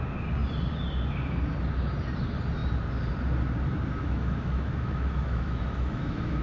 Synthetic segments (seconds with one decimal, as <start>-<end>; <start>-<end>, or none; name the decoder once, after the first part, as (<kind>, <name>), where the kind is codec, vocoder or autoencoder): 4.0-6.4 (autoencoder, DAC-VAE)